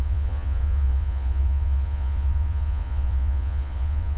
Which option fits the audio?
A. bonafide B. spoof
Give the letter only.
B